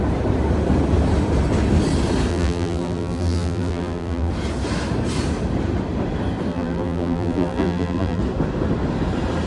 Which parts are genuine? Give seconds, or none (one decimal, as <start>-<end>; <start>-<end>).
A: 0.0-2.3; 4.3-6.5; 8.2-9.5